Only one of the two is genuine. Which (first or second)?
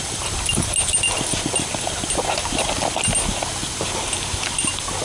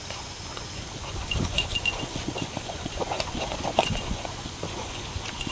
first